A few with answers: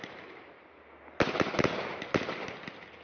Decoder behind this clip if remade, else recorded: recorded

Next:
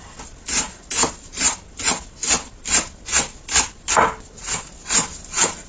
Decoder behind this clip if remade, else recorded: recorded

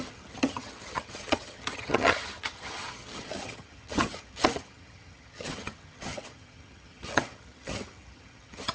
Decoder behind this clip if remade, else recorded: remade, vocoder, HiFi-GAN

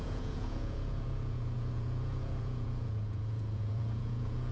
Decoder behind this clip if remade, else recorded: remade, vocoder, Vocos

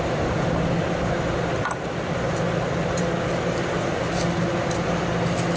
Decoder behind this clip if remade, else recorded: recorded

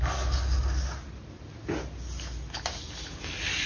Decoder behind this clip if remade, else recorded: recorded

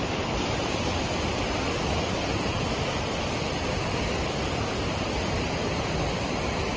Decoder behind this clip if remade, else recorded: remade, vocoder, BigVGAN v2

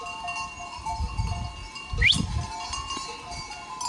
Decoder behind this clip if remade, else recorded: recorded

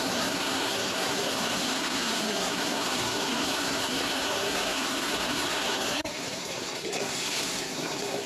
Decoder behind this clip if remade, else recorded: remade, codec, SNAC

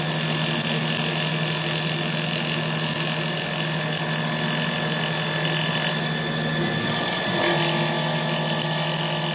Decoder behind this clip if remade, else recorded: recorded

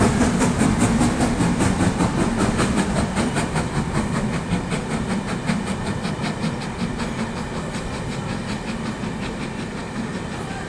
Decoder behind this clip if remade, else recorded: recorded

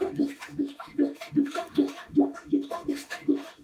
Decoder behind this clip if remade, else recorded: remade, autoencoder, DAC-VAE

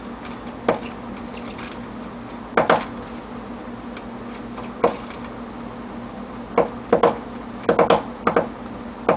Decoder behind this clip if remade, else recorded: recorded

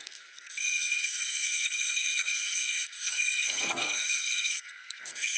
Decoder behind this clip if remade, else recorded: remade, codec, SNAC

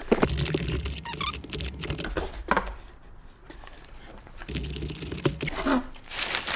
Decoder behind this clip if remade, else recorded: recorded